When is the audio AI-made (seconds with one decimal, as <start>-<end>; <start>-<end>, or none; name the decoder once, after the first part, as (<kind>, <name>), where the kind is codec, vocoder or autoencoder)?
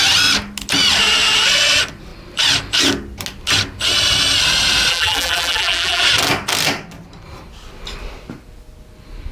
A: 4.9-6.0 (vocoder, BigVGAN v2)